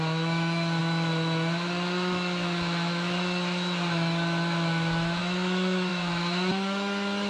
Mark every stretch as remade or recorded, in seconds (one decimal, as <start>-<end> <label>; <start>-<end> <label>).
0.0-7.3 remade